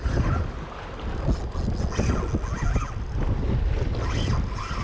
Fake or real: real